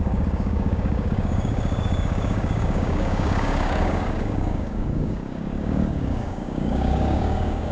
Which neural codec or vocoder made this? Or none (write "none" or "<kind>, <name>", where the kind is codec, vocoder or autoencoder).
codec, DAC